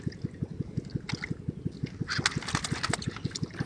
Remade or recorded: recorded